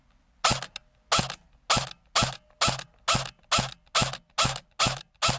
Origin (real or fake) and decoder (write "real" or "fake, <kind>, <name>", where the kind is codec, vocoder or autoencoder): real